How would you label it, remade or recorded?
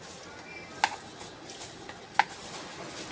recorded